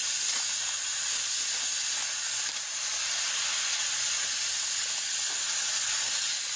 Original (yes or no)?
yes